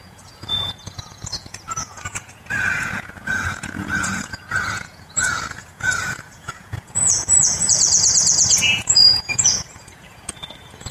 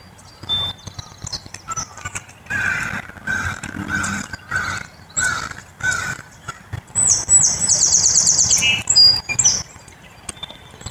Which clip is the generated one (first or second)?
first